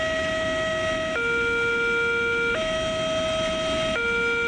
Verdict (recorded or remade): recorded